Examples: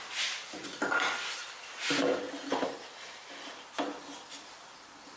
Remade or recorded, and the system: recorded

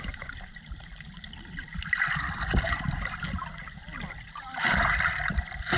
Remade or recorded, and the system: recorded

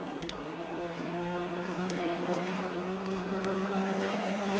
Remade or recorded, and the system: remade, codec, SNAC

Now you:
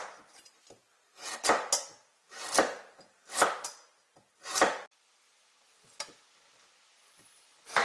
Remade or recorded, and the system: recorded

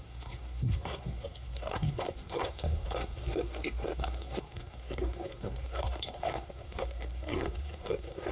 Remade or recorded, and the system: remade, codec, SNAC